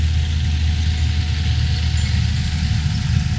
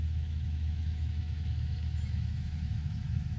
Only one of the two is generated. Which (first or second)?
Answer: second